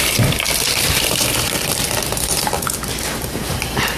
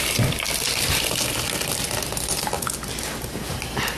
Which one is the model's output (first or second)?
first